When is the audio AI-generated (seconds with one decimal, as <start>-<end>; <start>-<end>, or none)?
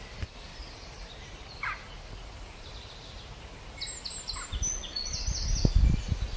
0.5-2.7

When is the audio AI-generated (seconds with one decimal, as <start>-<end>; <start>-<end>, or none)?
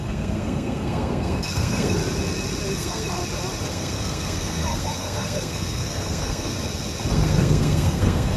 0.0-2.0; 2.7-3.2; 3.7-6.5; 7.1-8.4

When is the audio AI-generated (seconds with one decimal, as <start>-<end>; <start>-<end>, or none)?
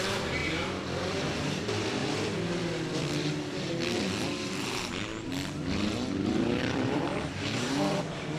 0.0-0.4; 1.1-2.0; 4.6-5.1; 6.6-8.4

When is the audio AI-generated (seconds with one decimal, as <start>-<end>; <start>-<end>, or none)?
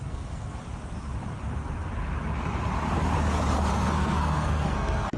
0.0-0.6; 3.7-5.2